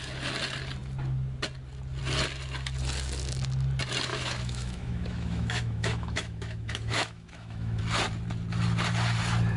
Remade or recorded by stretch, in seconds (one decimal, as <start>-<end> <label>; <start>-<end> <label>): 0.0-4.1 recorded; 4.1-7.8 remade; 7.8-9.6 recorded